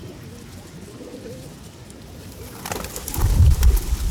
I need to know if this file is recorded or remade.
recorded